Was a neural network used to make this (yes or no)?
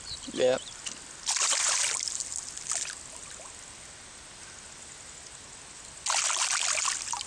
no